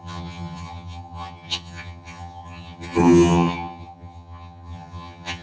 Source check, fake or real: fake